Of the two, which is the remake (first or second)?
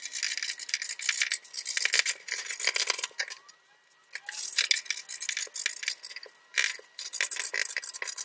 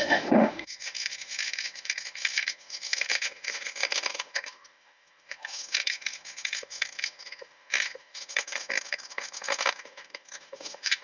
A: second